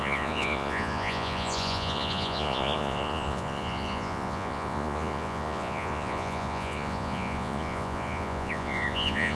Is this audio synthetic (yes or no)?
yes